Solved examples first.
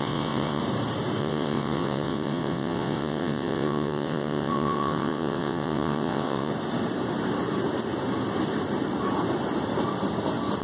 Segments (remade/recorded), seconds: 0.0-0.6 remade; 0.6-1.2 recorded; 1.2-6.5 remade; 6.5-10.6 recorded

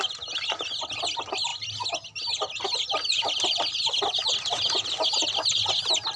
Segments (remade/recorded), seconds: 0.0-6.2 recorded

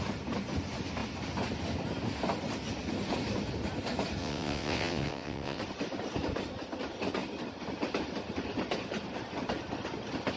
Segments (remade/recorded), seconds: 0.0-4.2 recorded; 4.2-5.6 remade; 5.6-10.4 recorded

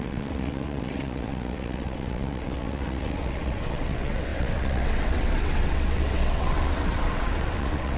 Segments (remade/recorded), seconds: 0.0-8.0 remade